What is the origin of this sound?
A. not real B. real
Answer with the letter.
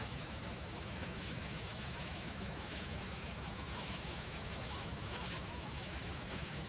A